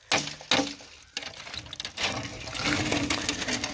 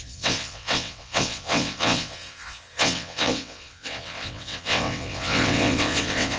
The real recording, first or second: first